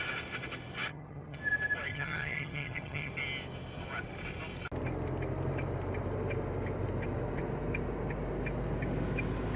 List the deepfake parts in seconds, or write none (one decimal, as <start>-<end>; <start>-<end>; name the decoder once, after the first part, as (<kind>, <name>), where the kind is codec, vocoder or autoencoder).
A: 0.9-1.4 (vocoder, HiFi-GAN); 1.9-3.1